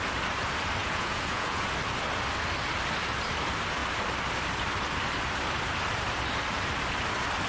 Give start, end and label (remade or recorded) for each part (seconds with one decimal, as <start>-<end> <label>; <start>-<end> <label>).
0.0-0.8 recorded; 0.8-1.7 remade; 1.7-7.5 recorded